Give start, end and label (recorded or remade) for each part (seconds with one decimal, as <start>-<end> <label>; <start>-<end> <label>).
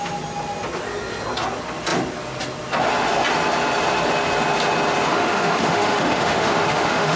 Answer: 0.0-5.1 recorded; 5.1-7.2 remade